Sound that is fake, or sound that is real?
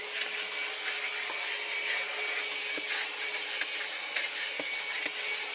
real